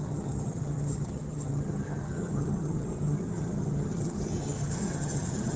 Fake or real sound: fake